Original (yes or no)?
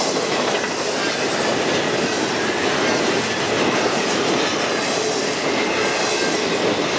yes